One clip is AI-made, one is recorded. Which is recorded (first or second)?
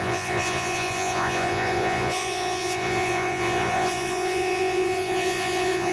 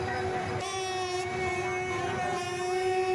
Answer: second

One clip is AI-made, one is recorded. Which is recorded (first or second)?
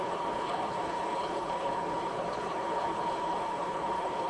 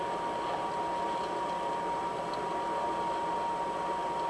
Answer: second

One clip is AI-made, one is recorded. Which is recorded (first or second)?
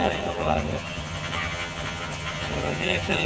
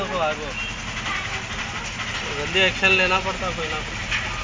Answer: second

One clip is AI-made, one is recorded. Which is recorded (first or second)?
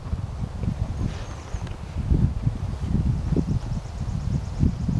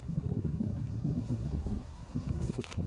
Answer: first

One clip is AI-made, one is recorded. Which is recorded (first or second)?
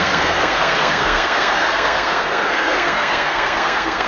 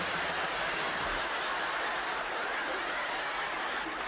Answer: second